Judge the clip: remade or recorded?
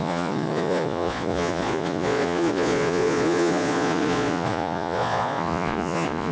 remade